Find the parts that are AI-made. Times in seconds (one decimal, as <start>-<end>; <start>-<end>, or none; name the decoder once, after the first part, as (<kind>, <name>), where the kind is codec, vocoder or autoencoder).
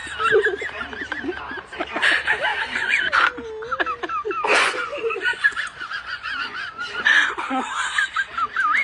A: 2.5-3.3 (vocoder, Vocos); 4.5-7.6